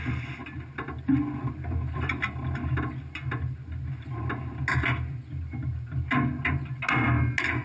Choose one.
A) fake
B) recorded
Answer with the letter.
B